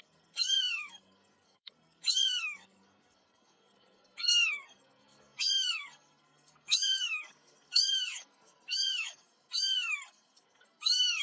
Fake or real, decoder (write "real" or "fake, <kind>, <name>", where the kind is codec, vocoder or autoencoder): fake, codec, SNAC